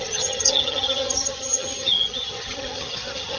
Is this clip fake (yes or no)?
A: yes